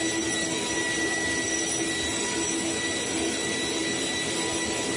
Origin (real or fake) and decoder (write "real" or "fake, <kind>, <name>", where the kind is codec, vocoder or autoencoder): real